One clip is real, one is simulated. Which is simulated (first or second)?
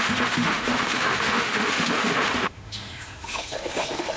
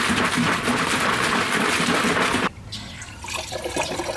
first